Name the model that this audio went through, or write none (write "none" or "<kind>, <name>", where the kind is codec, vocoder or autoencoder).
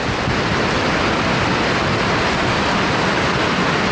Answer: none